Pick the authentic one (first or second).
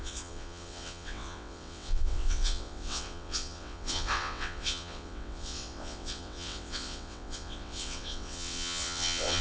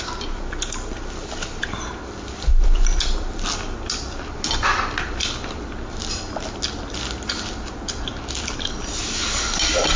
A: second